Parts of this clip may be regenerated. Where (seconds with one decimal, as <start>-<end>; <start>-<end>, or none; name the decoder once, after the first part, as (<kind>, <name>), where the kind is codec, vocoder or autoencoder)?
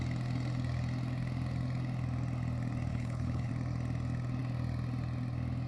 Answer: 2.9-3.5 (codec, HILCodec)